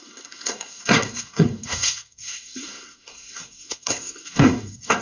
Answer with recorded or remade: remade